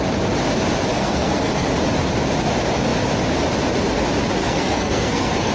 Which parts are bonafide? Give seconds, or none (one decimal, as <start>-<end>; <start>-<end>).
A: 0.0-0.9; 1.7-4.4